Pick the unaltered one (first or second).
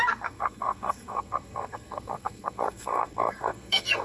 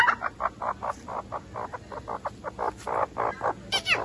second